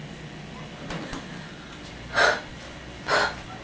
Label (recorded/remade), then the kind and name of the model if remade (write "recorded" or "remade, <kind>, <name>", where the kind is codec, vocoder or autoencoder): recorded